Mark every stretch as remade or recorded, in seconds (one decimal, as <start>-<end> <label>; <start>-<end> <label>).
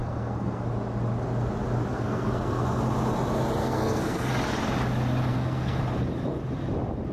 0.0-0.6 remade; 0.6-1.9 recorded; 1.9-2.8 remade; 2.8-3.6 recorded; 3.6-4.3 remade; 4.3-5.3 recorded; 5.3-5.8 remade; 5.8-7.1 recorded